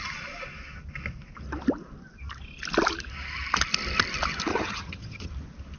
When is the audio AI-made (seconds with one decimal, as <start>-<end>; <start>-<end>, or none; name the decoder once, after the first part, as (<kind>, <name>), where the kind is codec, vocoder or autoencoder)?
4.5-5.3 (vocoder, HiFi-GAN)